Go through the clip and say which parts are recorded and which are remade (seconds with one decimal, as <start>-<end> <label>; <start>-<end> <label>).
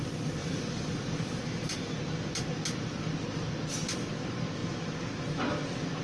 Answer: 0.0-0.4 recorded; 0.4-2.0 remade; 2.0-6.0 recorded